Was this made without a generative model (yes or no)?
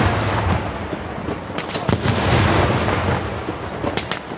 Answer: yes